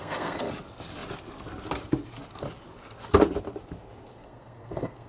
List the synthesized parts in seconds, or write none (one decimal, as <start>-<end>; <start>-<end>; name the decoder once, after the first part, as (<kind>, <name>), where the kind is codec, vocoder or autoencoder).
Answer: 0.0-0.5 (codec, SNAC); 4.1-5.1